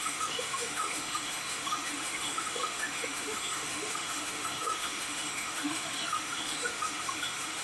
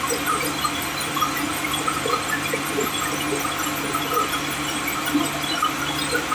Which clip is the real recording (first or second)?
second